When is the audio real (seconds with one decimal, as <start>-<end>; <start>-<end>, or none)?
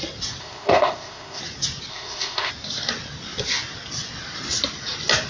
0.0-0.4; 1.4-1.9; 2.5-5.3